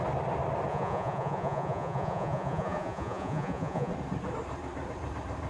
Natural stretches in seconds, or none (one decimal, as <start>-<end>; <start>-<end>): 0.0-0.7; 3.9-5.5